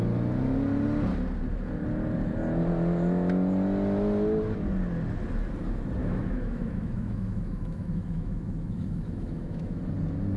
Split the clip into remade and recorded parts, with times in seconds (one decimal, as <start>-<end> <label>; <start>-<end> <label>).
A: 0.0-6.0 recorded; 6.0-9.8 remade; 9.8-10.4 recorded